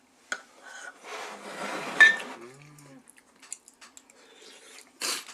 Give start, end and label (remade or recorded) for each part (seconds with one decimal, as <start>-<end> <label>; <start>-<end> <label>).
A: 0.0-5.3 recorded